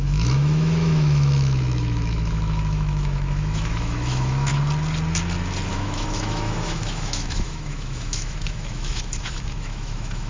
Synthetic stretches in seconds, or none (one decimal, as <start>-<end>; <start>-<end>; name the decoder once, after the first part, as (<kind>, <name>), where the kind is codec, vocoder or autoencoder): 0.0-4.5 (autoencoder, DAC-VAE); 5.7-10.3